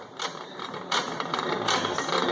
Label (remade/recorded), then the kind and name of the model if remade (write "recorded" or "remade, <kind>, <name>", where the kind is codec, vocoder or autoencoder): remade, vocoder, BigVGAN v2